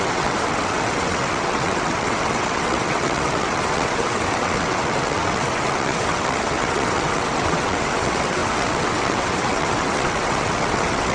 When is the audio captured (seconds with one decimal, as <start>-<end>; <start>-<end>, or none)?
none